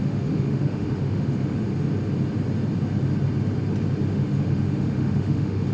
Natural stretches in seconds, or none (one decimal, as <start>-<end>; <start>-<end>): 1.7-4.1